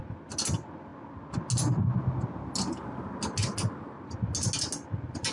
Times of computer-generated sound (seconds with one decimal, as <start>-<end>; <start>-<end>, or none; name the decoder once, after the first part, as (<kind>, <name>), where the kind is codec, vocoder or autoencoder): none